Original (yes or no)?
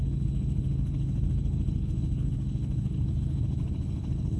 no